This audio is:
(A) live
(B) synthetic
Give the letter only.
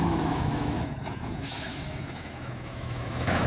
B